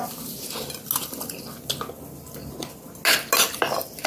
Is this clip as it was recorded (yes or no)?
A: yes